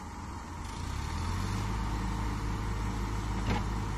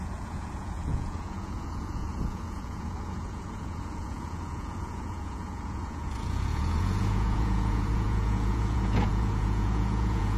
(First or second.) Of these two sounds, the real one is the first